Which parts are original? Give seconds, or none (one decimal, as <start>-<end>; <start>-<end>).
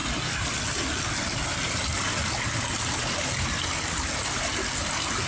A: 0.0-5.3